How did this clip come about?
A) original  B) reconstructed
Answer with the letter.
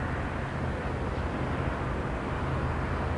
A